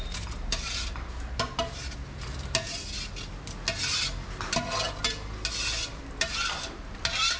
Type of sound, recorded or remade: recorded